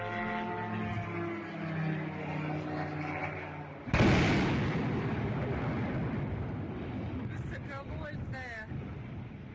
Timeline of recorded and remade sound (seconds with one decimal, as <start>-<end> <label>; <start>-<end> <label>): 0.0-9.5 recorded